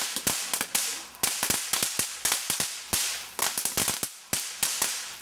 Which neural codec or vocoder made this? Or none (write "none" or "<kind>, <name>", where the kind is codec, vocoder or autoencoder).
none